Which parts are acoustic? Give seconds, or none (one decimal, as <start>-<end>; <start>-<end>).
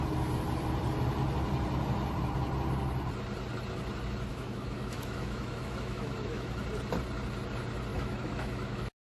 0.0-4.3; 6.6-7.9